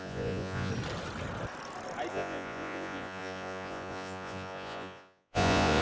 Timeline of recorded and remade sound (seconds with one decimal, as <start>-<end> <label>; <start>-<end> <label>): 0.0-0.7 remade; 0.7-2.1 recorded; 2.1-5.8 remade